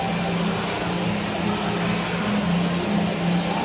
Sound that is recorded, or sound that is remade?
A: recorded